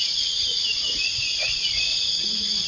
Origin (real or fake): fake